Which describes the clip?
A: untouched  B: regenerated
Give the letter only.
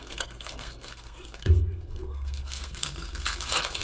B